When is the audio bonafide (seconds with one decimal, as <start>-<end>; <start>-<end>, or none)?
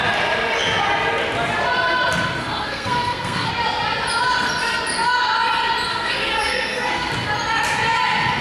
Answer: 0.0-2.4; 3.5-5.9; 7.1-8.4